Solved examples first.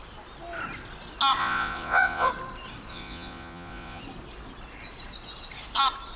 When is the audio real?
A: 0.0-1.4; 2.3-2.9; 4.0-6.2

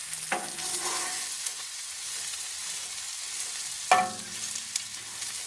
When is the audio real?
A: 0.0-0.7; 2.1-5.5

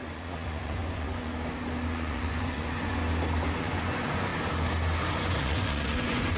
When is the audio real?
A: 1.3-1.9; 3.0-3.6; 4.3-5.1

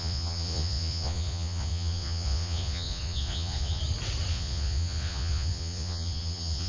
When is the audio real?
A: 3.8-4.3